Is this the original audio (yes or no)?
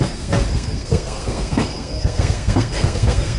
no